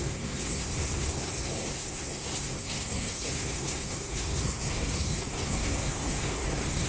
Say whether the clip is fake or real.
fake